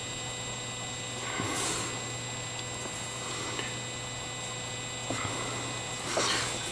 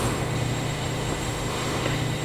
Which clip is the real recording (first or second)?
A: first